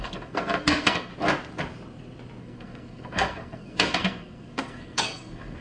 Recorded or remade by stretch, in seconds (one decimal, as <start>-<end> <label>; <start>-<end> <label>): 0.0-1.1 remade; 1.1-2.4 recorded; 2.4-5.6 remade